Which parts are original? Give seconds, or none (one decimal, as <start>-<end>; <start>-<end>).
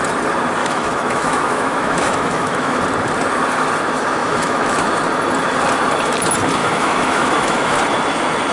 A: 0.0-0.6; 2.8-4.2; 4.9-6.6; 7.8-8.5